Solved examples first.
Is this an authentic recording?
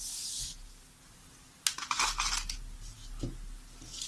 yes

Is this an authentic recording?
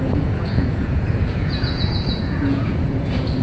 no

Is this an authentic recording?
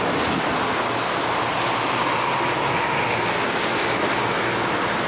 yes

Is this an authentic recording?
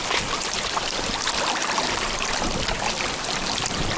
yes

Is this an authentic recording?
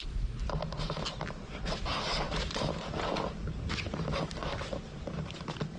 yes